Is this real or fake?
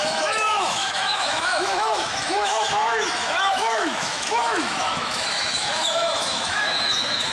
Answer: fake